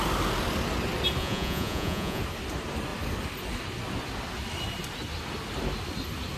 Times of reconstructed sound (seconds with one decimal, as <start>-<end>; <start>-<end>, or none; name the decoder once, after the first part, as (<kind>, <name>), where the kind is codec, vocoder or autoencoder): 1.2-2.2 (vocoder, Vocos)